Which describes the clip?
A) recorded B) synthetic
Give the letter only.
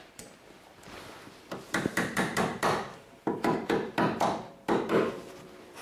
B